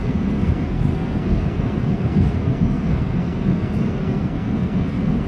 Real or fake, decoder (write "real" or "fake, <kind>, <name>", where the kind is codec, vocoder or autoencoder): fake, codec, SNAC